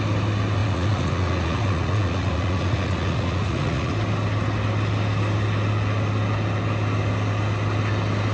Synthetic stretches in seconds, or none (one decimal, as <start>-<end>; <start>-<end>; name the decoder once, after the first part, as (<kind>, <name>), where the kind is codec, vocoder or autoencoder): 0.6-3.9 (vocoder, Vocos)